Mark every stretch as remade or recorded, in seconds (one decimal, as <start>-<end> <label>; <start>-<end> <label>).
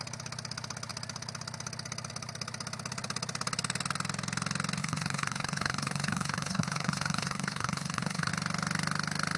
0.0-4.8 recorded; 4.8-8.3 remade; 8.3-9.4 recorded